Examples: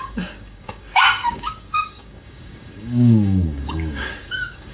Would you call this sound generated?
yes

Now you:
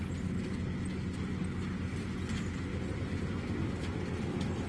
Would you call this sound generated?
no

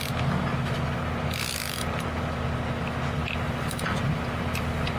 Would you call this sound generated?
no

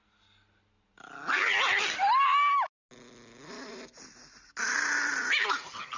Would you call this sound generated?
no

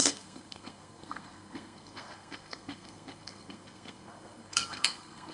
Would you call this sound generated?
yes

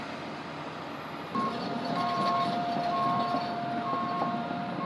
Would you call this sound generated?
no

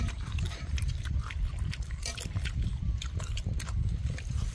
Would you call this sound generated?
yes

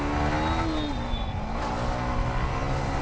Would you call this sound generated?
no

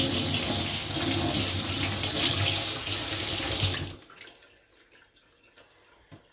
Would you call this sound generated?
no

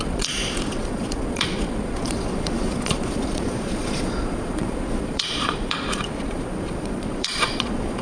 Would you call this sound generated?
yes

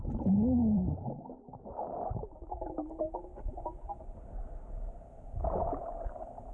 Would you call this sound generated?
no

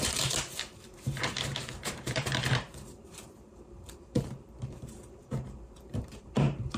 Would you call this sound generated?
yes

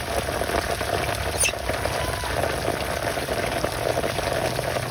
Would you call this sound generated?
no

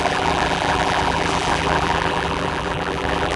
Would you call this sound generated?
yes